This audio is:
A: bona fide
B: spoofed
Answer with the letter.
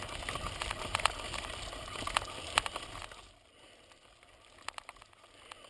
A